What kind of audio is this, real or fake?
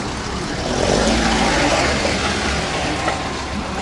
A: real